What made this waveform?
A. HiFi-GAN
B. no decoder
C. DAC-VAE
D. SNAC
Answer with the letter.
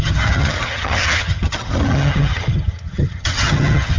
A